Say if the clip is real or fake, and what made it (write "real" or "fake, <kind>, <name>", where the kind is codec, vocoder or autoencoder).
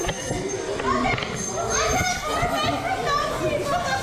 real